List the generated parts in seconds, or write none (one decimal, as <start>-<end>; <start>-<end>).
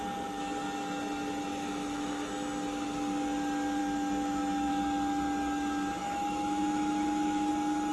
1.5-2.3; 3.8-4.7; 6.0-7.5